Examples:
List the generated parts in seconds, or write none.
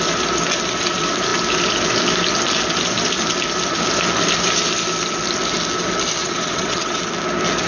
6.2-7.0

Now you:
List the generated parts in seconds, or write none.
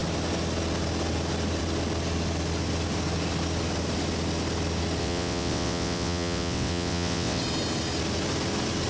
5.0-7.4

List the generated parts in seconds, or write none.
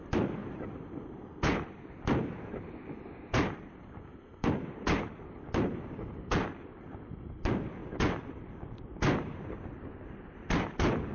none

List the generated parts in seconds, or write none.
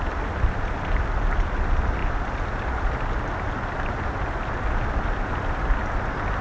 none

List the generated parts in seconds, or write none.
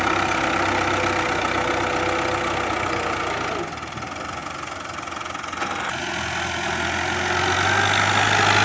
none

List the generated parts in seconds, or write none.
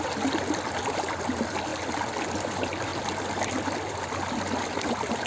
none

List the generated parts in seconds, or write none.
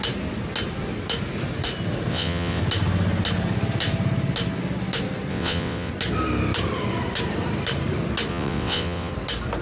2.1-2.6; 5.3-5.9; 8.3-9.1